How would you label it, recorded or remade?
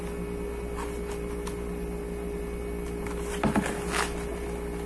recorded